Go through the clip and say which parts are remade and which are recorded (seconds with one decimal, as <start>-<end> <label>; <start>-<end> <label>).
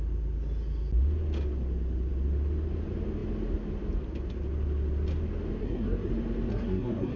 0.0-5.6 recorded; 5.6-6.1 remade; 6.1-6.5 recorded; 6.5-7.2 remade